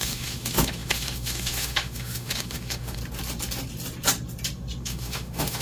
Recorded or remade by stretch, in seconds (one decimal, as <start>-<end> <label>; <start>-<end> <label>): 0.0-3.0 remade; 3.0-4.8 recorded; 4.8-5.6 remade

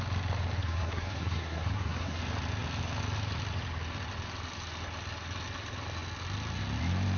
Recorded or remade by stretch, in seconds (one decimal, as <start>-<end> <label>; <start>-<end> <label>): 0.0-0.6 recorded; 0.6-2.2 remade; 2.2-7.2 recorded